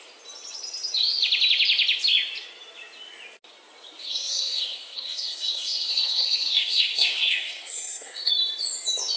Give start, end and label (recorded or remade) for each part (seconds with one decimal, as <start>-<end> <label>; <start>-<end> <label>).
0.0-4.0 recorded; 4.0-8.3 remade; 8.3-9.2 recorded

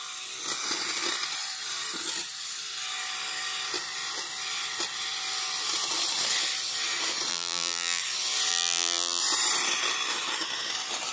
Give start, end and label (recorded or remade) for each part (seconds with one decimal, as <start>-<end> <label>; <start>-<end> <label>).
0.0-7.3 recorded; 7.3-8.0 remade; 8.0-8.5 recorded; 8.5-9.2 remade; 9.2-11.1 recorded

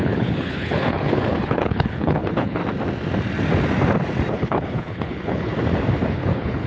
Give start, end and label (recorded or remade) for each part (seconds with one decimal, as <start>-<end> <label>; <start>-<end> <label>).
0.0-2.6 remade; 2.6-4.3 recorded; 4.3-5.5 remade; 5.5-6.1 recorded; 6.1-6.7 remade

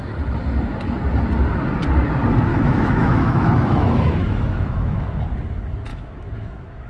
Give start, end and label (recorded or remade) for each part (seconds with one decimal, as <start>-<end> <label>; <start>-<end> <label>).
0.0-2.5 recorded; 2.5-5.2 remade; 5.2-5.9 recorded; 5.9-6.9 remade

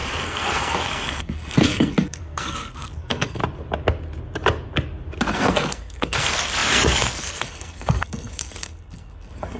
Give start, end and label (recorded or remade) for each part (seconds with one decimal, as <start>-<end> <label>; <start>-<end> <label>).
0.0-3.4 remade; 3.4-5.3 recorded; 5.3-9.6 remade

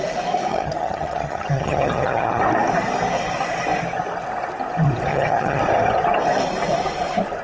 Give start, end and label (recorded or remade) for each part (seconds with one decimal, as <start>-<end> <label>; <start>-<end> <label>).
0.0-0.5 recorded; 0.5-2.4 remade; 2.4-5.1 recorded; 5.1-5.6 remade; 5.6-7.4 recorded